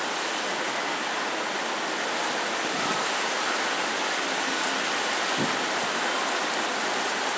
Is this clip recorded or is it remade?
recorded